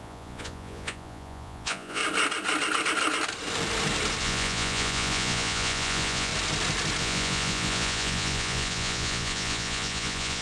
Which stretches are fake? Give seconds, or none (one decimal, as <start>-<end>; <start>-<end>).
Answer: 0.0-2.0; 4.2-6.3; 7.0-10.4